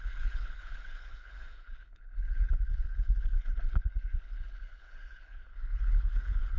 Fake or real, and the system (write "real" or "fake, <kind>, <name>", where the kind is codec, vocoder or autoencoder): fake, codec, HILCodec